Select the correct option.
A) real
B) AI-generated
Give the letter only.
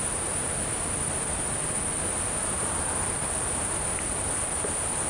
A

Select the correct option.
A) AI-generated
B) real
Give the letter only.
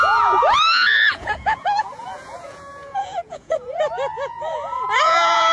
A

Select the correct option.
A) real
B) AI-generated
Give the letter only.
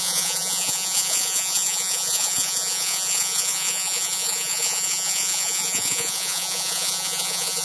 B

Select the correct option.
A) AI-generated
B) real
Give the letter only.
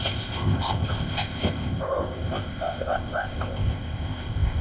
A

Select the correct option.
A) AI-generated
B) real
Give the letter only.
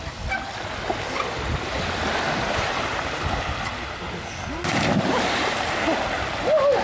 B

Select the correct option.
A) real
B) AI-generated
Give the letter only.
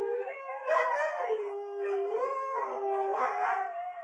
B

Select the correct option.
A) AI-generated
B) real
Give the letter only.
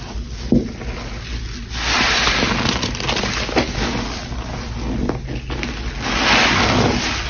B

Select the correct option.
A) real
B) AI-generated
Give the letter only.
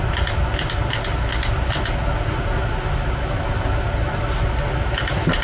A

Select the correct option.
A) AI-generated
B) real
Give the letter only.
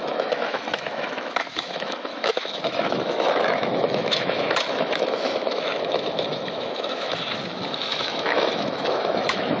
A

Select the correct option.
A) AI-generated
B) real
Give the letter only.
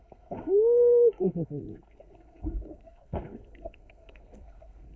A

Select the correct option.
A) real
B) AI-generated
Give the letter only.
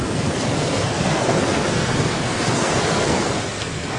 B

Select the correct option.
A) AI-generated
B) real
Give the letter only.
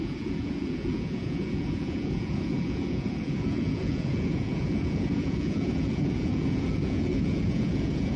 A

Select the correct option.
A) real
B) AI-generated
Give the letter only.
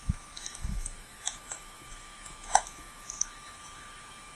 B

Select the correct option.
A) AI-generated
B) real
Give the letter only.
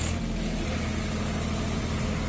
B